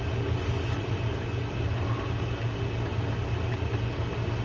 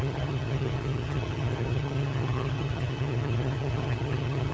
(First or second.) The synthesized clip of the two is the second